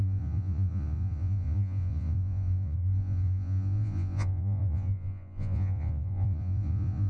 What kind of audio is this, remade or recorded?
remade